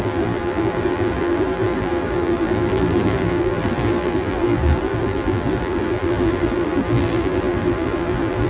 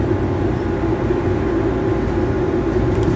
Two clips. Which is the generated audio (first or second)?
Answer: first